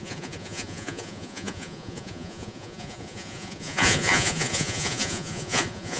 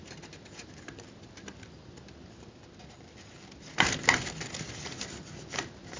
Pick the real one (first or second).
second